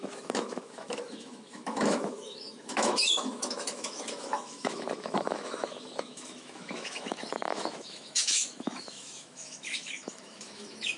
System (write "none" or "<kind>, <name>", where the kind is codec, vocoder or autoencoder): autoencoder, DAC-VAE